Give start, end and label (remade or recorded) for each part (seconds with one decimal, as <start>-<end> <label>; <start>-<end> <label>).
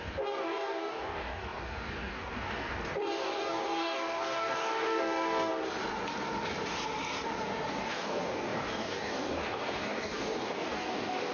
0.0-5.5 remade; 5.5-7.7 recorded; 7.7-11.3 remade